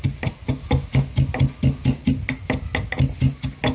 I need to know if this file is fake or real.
real